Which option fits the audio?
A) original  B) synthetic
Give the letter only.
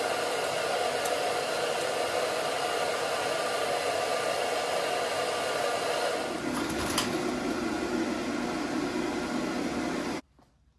A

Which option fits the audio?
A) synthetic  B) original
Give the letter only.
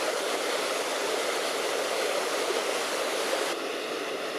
B